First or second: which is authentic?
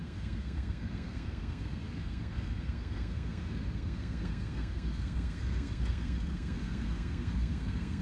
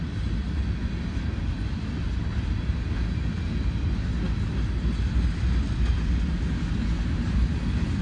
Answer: second